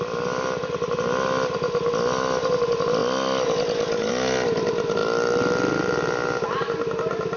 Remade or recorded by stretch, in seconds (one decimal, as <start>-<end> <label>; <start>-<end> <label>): 0.0-7.4 recorded